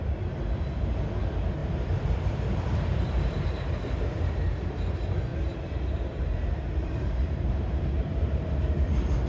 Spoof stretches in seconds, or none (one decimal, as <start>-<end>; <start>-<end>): 1.6-3.7; 5.3-8.5